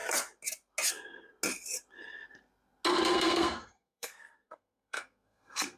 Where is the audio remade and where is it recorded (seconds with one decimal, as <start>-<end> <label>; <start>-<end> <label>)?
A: 0.0-2.9 recorded; 2.9-5.8 remade